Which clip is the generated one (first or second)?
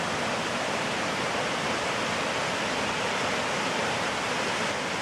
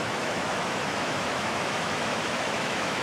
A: second